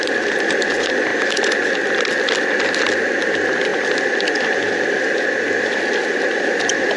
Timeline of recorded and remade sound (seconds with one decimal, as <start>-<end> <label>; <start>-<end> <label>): 0.0-7.0 recorded